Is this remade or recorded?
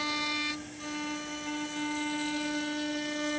recorded